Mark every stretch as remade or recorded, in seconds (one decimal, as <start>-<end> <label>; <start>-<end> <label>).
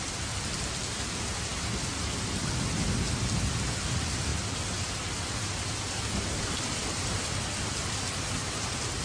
0.0-9.0 recorded